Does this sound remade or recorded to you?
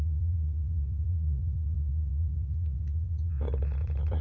remade